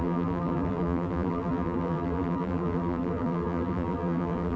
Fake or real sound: fake